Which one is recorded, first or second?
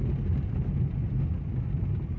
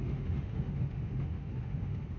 first